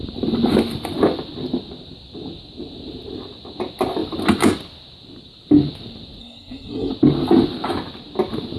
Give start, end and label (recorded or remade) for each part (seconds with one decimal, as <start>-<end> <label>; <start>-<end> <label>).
0.0-6.2 recorded; 6.2-6.9 remade; 6.9-8.6 recorded